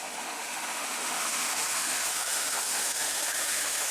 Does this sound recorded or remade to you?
remade